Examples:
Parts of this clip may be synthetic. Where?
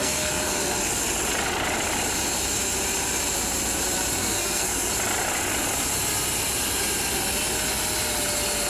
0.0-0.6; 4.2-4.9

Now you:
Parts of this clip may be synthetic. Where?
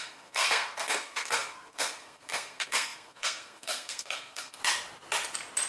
0.0-4.6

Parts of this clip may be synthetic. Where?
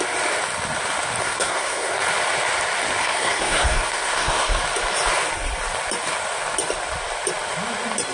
1.2-1.9; 3.0-4.6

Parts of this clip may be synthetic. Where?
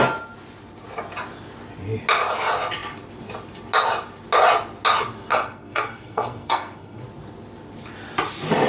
5.3-7.0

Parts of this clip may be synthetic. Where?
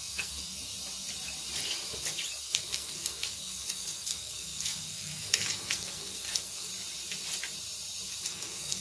0.0-0.7; 2.4-6.7; 8.2-8.8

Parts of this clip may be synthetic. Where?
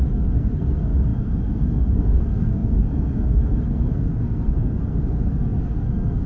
0.0-6.3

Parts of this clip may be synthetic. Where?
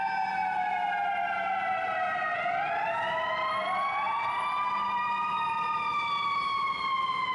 none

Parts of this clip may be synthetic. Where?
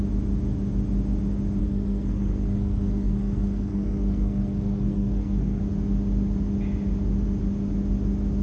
1.6-5.6